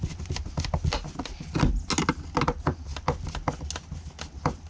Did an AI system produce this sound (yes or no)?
no